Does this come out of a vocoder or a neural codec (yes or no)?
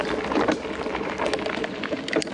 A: no